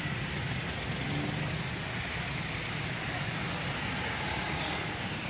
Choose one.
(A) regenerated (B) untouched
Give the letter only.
B